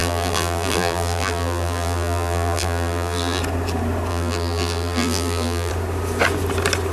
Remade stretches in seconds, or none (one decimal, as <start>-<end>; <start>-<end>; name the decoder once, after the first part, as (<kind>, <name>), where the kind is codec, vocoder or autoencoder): 0.0-3.4 (vocoder, BigVGAN v2); 4.1-5.7